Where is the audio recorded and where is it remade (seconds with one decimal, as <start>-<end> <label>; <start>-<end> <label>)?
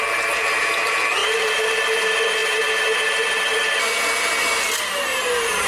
0.0-1.2 recorded; 1.2-1.7 remade; 1.7-5.1 recorded; 5.1-5.7 remade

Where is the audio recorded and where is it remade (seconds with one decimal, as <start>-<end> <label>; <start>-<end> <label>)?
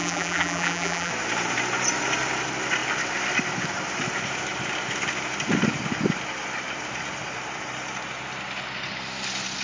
0.0-1.1 remade; 1.1-9.6 recorded